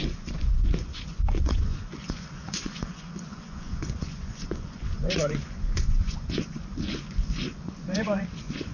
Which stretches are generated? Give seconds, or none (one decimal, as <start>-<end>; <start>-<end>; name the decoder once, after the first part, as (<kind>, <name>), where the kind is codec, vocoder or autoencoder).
0.0-8.7 (vocoder, Vocos)